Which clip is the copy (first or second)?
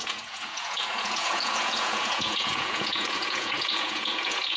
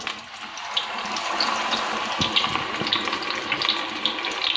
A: first